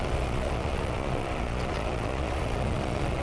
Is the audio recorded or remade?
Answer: remade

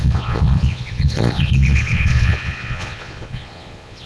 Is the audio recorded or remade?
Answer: remade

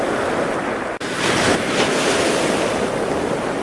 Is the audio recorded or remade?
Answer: recorded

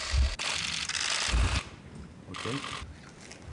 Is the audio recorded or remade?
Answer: recorded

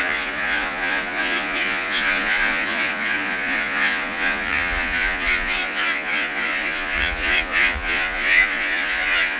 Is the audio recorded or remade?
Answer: remade